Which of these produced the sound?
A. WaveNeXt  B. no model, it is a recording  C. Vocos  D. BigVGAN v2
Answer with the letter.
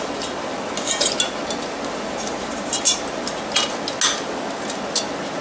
B